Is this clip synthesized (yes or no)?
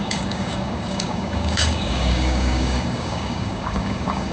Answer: yes